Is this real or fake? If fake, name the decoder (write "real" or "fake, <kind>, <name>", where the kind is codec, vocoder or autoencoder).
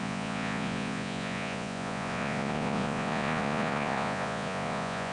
fake, vocoder, Vocos